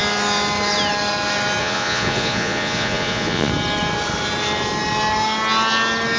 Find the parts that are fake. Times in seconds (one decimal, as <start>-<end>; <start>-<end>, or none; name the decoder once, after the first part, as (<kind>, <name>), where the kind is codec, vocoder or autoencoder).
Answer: 1.6-3.5 (vocoder, Vocos)